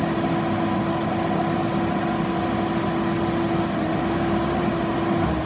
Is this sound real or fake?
real